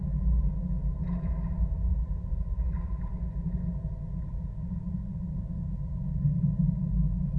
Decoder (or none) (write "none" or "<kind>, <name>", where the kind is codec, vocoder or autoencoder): none